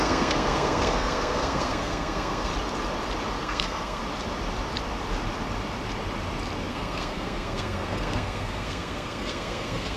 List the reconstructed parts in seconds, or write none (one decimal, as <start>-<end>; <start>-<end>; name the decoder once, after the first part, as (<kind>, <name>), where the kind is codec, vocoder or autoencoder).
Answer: 0.0-2.5 (codec, SNAC); 3.4-4.0; 6.7-10.0